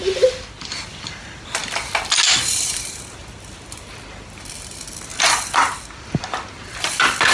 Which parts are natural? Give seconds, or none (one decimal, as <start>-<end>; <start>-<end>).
0.0-7.3